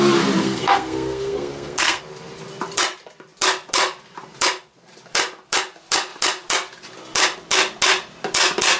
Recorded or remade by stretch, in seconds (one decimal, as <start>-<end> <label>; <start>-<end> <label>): 0.0-0.4 recorded; 0.4-2.0 remade; 2.0-8.8 recorded